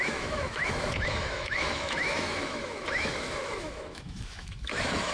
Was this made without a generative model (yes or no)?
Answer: no